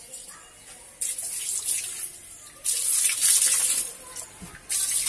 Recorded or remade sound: recorded